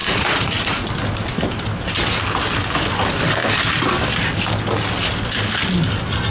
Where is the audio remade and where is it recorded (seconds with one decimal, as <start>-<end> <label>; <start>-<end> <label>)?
0.0-0.9 remade; 0.9-6.3 recorded